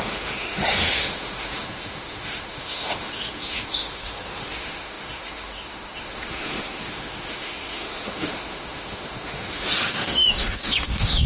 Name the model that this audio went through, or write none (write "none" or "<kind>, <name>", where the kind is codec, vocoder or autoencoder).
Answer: autoencoder, DAC-VAE